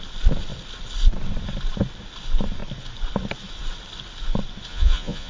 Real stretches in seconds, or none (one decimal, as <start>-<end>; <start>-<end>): 0.0-4.7